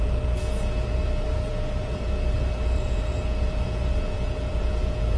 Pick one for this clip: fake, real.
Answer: fake